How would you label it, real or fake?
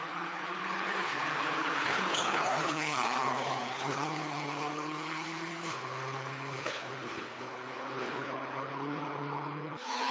fake